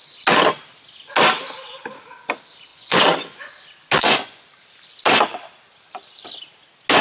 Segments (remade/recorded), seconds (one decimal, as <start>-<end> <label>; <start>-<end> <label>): 0.0-2.7 recorded; 2.7-3.5 remade; 3.5-4.0 recorded; 4.0-4.5 remade; 4.5-7.0 recorded